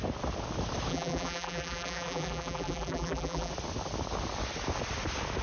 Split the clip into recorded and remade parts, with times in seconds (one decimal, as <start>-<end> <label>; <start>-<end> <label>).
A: 0.0-0.9 recorded; 0.9-3.5 remade; 3.5-5.4 recorded